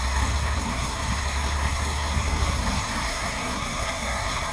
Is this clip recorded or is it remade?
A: remade